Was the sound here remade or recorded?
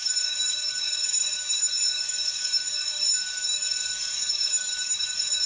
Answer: remade